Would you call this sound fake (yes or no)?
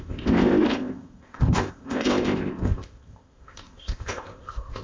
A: yes